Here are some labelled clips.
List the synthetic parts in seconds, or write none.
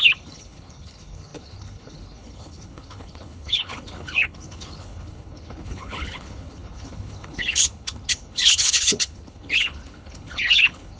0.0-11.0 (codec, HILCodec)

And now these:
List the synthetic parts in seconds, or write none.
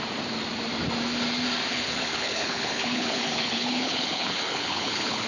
1.7-5.3 (codec, HILCodec)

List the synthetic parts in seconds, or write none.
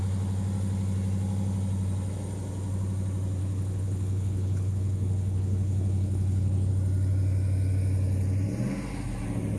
3.4-6.7 (codec, HILCodec)